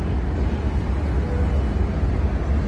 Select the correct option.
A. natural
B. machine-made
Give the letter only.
A